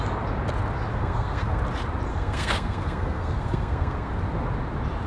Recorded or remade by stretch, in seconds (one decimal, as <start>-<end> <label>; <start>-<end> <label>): 0.0-0.9 recorded; 0.9-1.6 remade; 1.6-2.1 recorded; 2.1-4.1 remade; 4.1-5.1 recorded